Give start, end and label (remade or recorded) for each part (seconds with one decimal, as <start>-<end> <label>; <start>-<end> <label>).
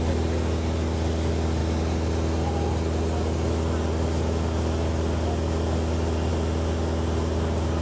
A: 0.0-7.8 recorded